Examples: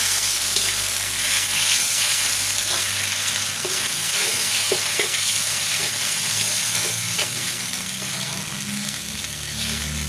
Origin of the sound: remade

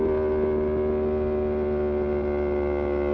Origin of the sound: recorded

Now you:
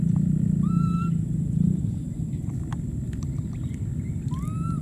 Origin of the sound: recorded